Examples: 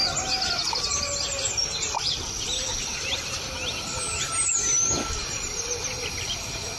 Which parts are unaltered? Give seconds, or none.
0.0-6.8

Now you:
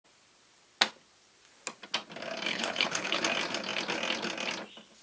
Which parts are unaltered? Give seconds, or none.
0.0-2.5; 3.2-5.0

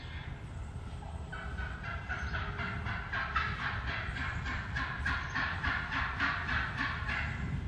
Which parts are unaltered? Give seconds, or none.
0.0-7.7